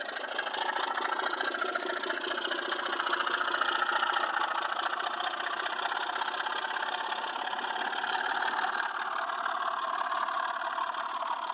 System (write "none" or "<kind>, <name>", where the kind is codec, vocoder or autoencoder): none